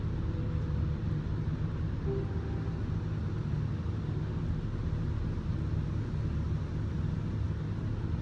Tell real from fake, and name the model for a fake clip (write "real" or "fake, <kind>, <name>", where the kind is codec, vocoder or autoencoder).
real